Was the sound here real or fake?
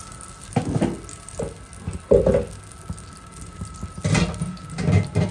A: real